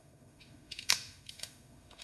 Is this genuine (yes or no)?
no